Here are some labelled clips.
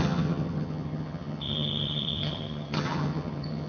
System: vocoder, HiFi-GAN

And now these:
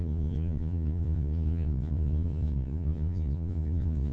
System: vocoder, Vocos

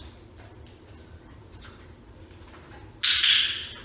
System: none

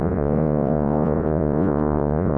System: vocoder, Vocos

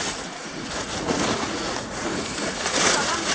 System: vocoder, Vocos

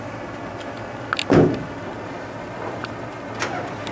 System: none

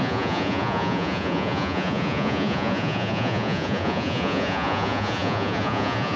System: vocoder, Vocos